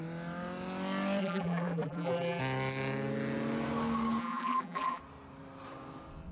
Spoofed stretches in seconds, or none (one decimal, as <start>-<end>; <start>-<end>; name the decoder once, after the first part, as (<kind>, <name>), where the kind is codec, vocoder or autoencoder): 1.2-2.4 (vocoder, BigVGAN v2); 4.2-5.0